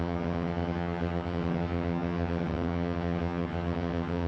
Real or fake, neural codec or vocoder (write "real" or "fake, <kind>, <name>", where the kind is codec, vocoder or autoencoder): fake, vocoder, HiFi-GAN